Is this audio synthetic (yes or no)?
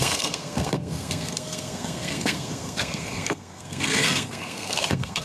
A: yes